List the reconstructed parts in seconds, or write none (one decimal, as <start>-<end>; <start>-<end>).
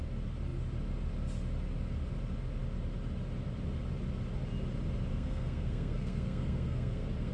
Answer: 5.1-7.3